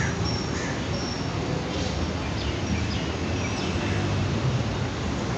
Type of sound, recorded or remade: recorded